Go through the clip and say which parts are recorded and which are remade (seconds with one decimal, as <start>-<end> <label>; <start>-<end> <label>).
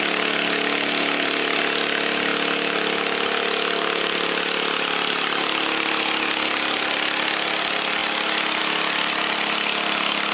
0.0-10.3 recorded